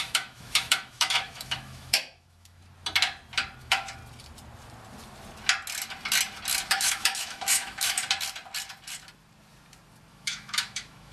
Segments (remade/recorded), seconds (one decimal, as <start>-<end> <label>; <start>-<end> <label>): 0.0-2.6 remade; 2.6-3.6 recorded; 3.6-4.0 remade; 4.0-6.7 recorded; 6.7-8.0 remade; 8.0-10.1 recorded; 10.1-11.1 remade